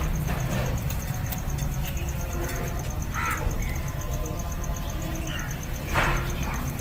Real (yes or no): yes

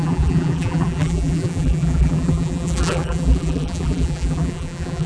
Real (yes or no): no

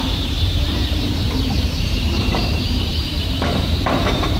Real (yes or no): no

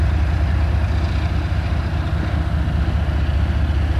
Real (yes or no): yes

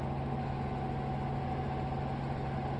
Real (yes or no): yes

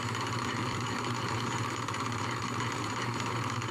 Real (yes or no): no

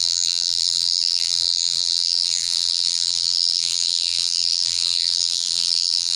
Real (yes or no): no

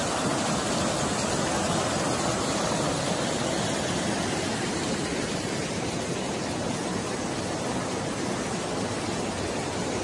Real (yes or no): yes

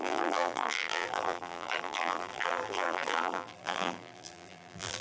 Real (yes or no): no